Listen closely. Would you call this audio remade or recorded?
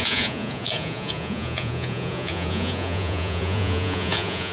remade